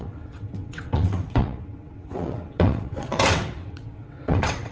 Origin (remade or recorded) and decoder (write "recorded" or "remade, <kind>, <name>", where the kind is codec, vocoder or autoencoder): remade, vocoder, WaveNeXt